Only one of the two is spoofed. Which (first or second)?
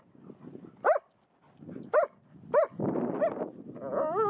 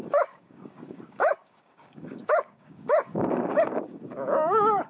second